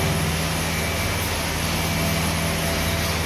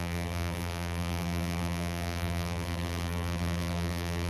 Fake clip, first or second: second